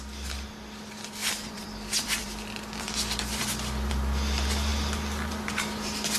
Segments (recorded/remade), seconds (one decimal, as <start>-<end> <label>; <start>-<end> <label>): 0.0-1.2 recorded; 1.2-3.9 remade; 3.9-6.2 recorded